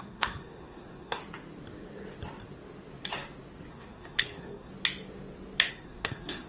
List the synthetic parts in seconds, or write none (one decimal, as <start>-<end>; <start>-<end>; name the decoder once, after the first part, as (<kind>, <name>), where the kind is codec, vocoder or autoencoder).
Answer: 0.0-1.2 (codec, SNAC); 3.7-4.7; 5.7-6.5